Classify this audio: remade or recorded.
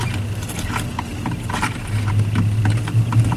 recorded